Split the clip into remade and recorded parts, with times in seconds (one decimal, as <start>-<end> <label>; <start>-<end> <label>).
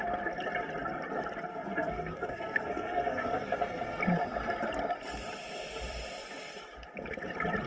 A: 0.0-1.5 recorded; 1.5-4.0 remade; 4.0-7.7 recorded